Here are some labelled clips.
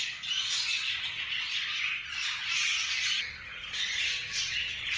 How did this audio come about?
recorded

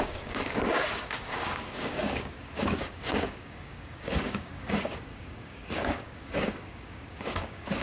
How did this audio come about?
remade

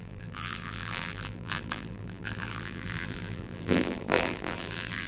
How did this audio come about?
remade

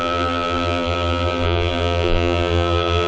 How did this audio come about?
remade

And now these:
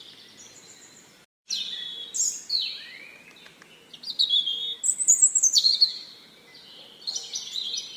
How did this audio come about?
recorded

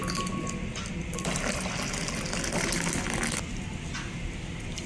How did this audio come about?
recorded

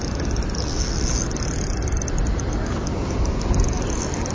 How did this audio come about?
recorded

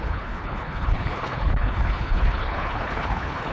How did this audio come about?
remade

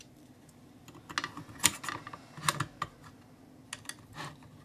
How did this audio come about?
recorded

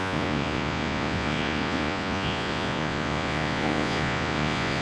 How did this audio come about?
remade